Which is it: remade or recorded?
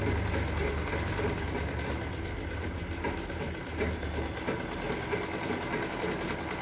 recorded